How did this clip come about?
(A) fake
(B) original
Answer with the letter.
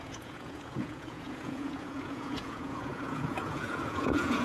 A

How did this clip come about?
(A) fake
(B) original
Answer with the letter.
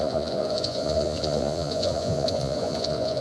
A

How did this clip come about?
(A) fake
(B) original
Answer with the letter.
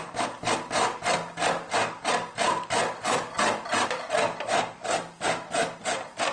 B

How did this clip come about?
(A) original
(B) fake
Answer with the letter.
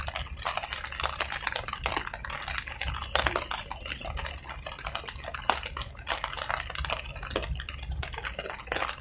A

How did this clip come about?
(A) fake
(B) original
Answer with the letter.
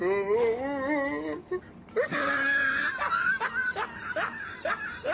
B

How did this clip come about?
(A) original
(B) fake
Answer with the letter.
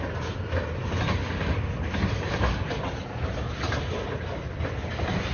A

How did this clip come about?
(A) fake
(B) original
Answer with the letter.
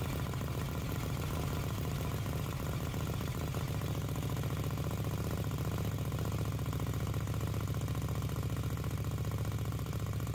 B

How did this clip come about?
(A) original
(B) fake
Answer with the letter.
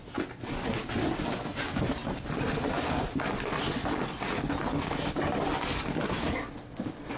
A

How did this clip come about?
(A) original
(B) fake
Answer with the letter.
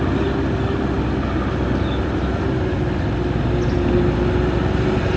A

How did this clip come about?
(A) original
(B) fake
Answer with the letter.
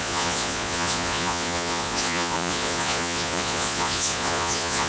B